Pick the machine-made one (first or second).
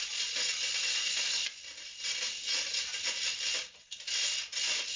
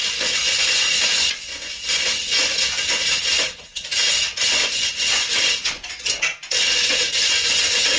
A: second